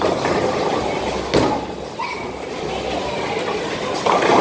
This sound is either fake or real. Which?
real